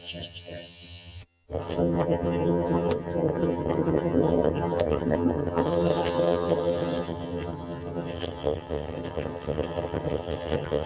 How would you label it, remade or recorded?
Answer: remade